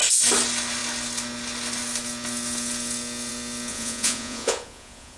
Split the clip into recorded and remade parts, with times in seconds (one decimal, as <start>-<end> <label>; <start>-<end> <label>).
0.0-3.7 recorded; 3.7-5.2 remade